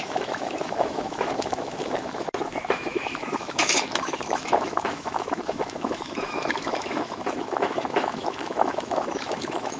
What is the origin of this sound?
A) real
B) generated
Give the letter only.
B